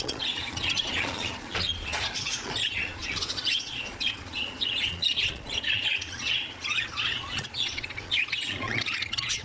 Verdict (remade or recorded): remade